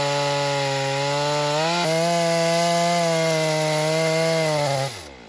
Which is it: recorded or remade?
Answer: recorded